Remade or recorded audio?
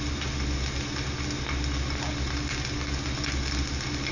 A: recorded